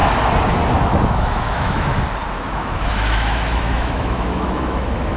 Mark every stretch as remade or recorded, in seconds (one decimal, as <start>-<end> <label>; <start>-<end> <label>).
0.0-0.8 recorded; 0.8-1.9 remade; 1.9-2.4 recorded; 2.4-5.2 remade